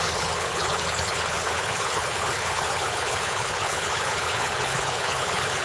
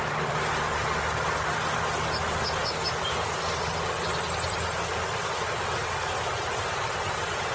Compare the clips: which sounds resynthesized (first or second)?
first